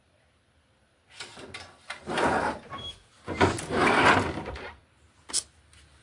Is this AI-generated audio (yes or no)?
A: no